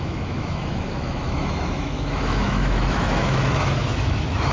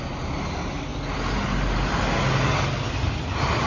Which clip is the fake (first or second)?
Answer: first